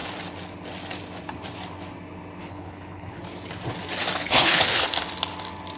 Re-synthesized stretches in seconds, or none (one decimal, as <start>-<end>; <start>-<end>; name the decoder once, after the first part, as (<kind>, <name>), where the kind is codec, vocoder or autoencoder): 2.4-3.2 (codec, HILCodec); 4.2-4.8